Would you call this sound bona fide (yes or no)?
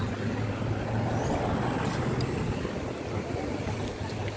yes